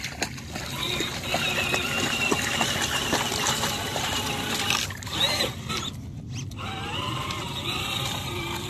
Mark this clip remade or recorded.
recorded